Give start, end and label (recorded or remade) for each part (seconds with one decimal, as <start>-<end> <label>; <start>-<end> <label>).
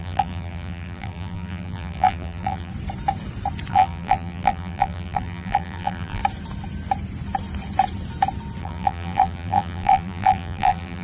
0.0-2.7 remade; 2.7-3.7 recorded; 3.7-6.2 remade; 6.2-8.6 recorded; 8.6-11.0 remade